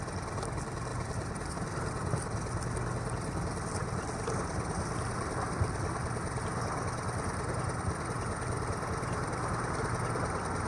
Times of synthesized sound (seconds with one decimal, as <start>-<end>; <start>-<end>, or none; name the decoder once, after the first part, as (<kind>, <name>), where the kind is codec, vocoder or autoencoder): 0.9-1.5 (vocoder, BigVGAN v2); 3.8-6.5